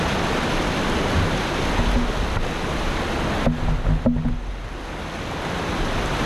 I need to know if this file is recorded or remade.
recorded